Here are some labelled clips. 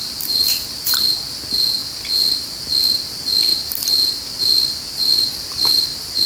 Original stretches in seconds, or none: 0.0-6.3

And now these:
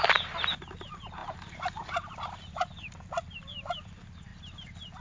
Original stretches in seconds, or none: 4.3-5.0